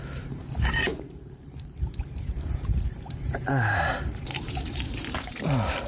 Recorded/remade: remade